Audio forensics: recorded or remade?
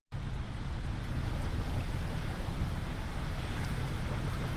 remade